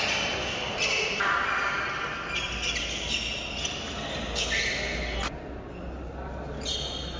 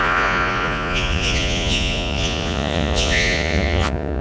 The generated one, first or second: second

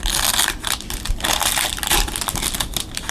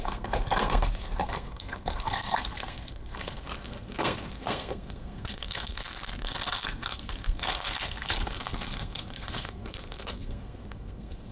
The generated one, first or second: second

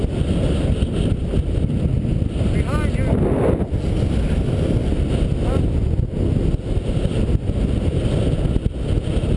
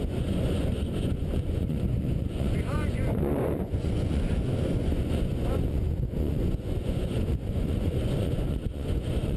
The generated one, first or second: second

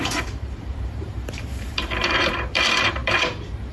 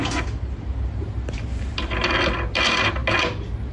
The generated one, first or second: first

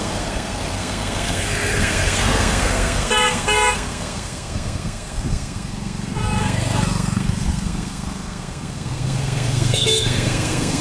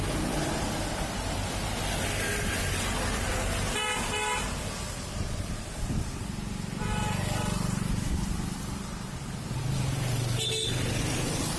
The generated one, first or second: first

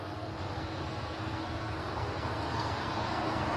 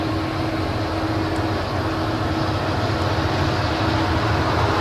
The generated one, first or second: first